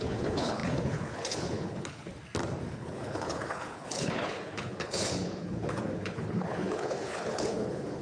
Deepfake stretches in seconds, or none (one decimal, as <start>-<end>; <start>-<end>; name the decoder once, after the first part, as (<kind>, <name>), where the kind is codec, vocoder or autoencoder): 0.0-2.1 (codec, HILCodec); 2.7-8.0